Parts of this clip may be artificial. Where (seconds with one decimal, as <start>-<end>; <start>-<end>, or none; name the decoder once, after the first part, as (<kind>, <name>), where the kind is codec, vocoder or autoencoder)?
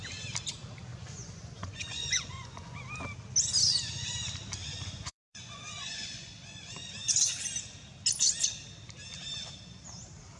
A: 0.9-2.8 (vocoder, Vocos); 4.6-6.9